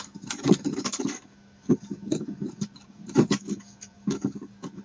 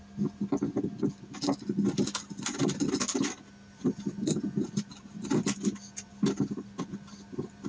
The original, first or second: second